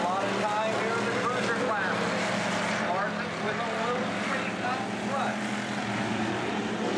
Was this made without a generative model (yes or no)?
yes